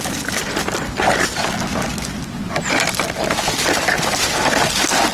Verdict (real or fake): real